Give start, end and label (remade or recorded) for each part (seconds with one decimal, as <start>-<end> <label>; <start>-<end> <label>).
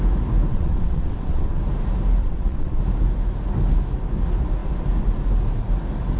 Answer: 0.0-0.5 recorded; 0.5-1.6 remade; 1.6-2.2 recorded; 2.2-2.8 remade; 2.8-6.2 recorded